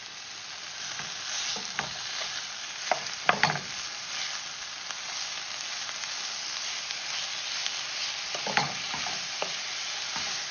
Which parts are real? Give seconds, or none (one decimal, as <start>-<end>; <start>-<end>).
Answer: 0.0-10.5